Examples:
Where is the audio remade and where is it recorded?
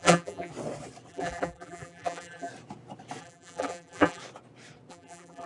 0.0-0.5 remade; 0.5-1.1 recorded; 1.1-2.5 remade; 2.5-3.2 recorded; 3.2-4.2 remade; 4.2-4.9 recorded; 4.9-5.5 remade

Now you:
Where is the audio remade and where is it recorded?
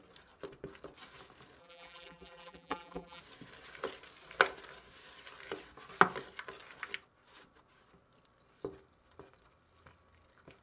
0.0-1.6 recorded; 1.6-3.2 remade; 3.2-10.6 recorded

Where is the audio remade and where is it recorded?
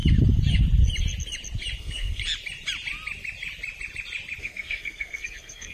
0.0-1.8 recorded; 1.8-2.2 remade; 2.2-4.4 recorded; 4.4-5.7 remade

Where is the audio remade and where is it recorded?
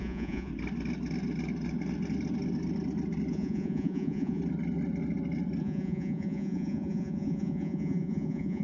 0.0-0.5 remade; 0.5-3.3 recorded; 3.3-4.4 remade; 4.4-5.6 recorded; 5.6-8.6 remade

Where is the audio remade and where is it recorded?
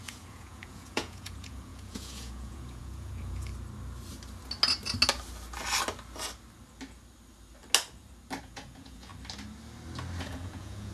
0.0-3.5 remade; 3.5-8.4 recorded; 8.4-9.1 remade; 9.1-10.2 recorded; 10.2-10.9 remade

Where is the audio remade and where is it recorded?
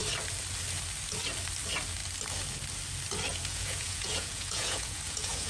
0.0-3.3 recorded; 3.3-5.5 remade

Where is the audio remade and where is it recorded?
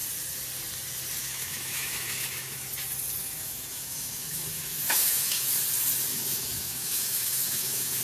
0.0-1.2 recorded; 1.2-2.7 remade; 2.7-3.2 recorded; 3.2-5.5 remade; 5.5-6.1 recorded; 6.1-8.0 remade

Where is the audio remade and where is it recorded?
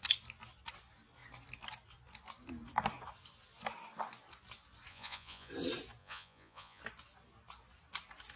0.0-4.9 recorded; 4.9-5.5 remade; 5.5-6.0 recorded; 6.0-6.8 remade; 6.8-8.4 recorded